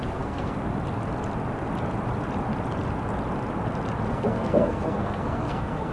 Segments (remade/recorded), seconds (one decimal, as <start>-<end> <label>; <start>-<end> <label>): 0.0-0.6 remade; 0.6-4.1 recorded; 4.1-5.9 remade